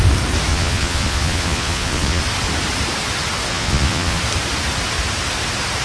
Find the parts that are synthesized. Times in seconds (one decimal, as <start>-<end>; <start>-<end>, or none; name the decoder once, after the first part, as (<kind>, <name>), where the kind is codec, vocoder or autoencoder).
0.5-2.2 (vocoder, Vocos); 3.5-4.2